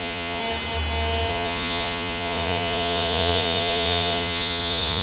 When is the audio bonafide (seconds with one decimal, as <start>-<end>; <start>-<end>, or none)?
0.4-1.3